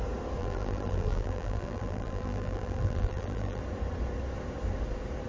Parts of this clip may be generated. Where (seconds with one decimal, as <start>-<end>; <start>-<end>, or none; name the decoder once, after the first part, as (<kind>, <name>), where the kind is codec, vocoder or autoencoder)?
0.4-3.6 (vocoder, BigVGAN v2)

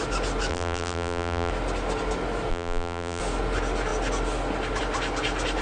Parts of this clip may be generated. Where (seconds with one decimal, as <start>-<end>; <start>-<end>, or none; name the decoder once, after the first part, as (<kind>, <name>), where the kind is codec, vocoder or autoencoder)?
0.5-1.5 (vocoder, BigVGAN v2); 2.5-3.2

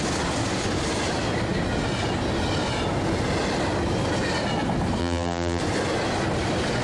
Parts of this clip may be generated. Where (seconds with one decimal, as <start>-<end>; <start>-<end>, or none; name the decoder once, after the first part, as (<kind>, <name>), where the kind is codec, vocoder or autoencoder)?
5.0-5.6 (vocoder, BigVGAN v2)

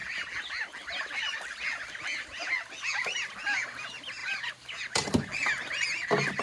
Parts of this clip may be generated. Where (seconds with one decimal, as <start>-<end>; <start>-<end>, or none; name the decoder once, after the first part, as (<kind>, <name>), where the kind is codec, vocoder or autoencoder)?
none